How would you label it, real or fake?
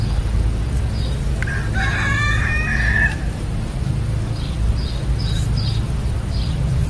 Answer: real